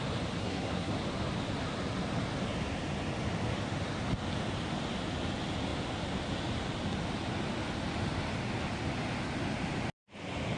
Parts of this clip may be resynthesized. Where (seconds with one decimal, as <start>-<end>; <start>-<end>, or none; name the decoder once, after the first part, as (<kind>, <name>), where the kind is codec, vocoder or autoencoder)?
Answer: 0.4-0.9 (codec, SNAC)